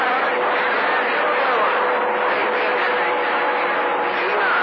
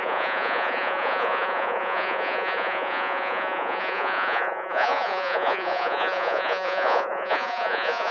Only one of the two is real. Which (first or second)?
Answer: first